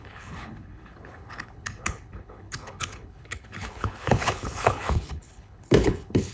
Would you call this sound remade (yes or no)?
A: yes